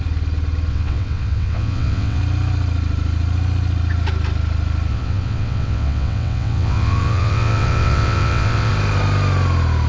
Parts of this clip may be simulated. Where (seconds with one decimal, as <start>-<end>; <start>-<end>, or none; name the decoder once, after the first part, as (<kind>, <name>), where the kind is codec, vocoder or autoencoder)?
0.7-2.2 (vocoder, WaveNeXt); 4.9-8.7